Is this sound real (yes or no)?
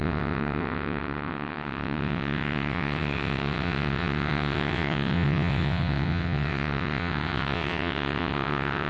no